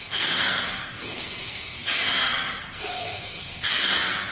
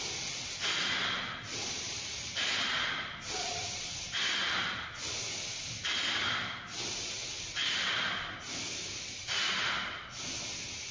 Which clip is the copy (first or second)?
first